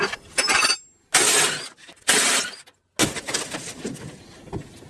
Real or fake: real